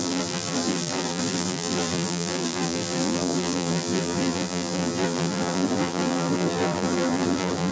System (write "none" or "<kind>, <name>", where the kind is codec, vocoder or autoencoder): vocoder, BigVGAN v2